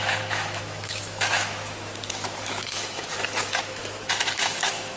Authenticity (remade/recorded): remade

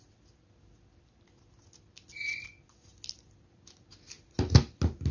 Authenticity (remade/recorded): recorded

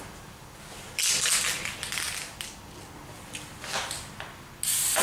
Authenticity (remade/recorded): recorded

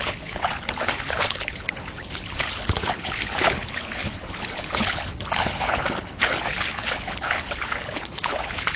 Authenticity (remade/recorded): remade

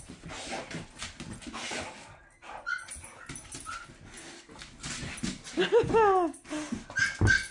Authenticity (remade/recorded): recorded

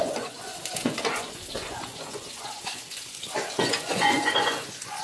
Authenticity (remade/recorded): remade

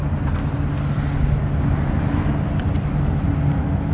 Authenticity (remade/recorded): recorded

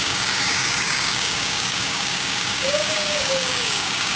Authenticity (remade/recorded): remade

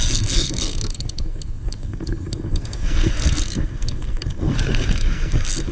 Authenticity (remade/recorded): remade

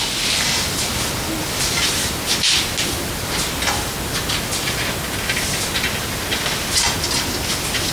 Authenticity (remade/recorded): recorded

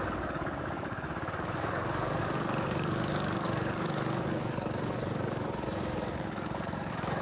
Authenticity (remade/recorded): remade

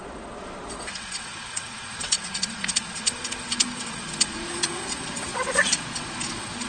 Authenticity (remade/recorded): remade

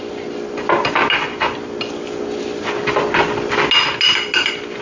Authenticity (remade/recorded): recorded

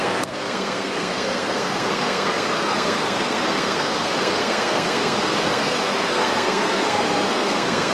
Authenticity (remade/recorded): remade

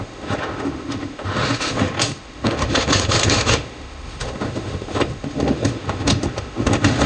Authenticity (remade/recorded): remade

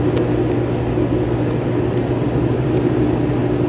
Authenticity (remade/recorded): recorded